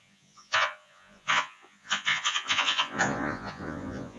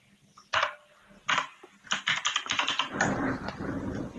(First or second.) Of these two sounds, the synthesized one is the first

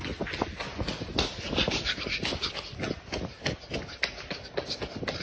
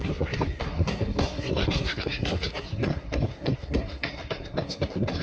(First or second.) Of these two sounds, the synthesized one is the second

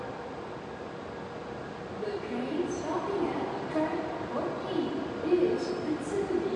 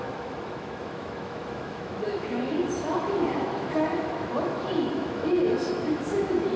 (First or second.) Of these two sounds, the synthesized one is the second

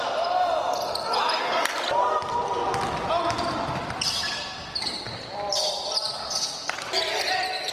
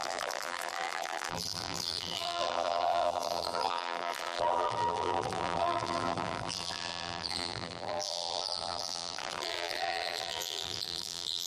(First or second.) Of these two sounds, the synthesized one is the second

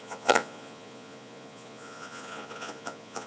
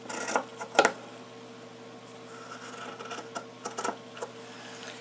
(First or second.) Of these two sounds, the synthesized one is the first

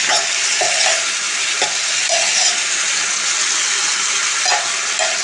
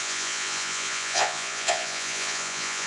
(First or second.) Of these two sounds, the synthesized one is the second